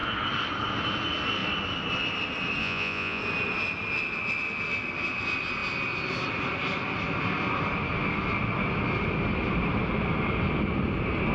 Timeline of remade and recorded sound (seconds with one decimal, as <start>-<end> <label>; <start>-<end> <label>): 0.0-2.6 recorded; 2.6-3.2 remade; 3.2-11.3 recorded